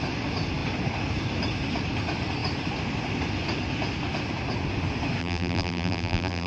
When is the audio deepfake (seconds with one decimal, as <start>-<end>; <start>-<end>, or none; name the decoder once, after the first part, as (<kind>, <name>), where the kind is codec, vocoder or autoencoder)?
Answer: 5.2-6.5 (vocoder, BigVGAN v2)